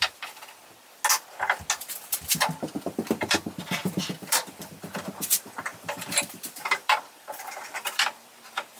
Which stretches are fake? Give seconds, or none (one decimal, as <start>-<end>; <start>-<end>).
0.0-0.6; 2.8-8.8